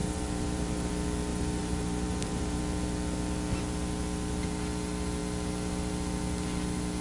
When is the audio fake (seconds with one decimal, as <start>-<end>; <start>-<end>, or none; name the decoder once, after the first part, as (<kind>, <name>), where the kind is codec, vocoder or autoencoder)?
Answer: 0.0-0.9 (vocoder, BigVGAN v2); 1.3-2.6